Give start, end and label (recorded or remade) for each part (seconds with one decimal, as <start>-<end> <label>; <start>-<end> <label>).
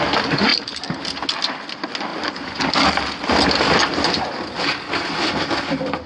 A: 0.0-6.1 recorded